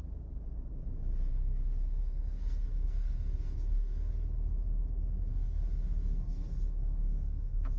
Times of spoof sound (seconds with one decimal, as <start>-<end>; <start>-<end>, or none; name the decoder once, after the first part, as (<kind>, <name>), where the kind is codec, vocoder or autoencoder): 2.0-4.1 (codec, SNAC); 5.3-7.8